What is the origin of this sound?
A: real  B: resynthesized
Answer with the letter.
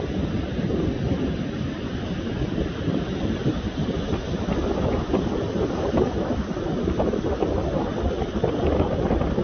B